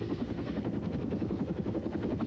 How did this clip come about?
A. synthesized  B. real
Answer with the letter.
A